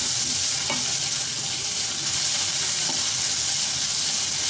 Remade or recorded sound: recorded